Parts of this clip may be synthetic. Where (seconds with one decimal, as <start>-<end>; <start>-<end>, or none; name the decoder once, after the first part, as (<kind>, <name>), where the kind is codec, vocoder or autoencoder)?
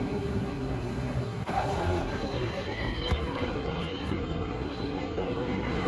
0.0-5.9 (codec, SNAC)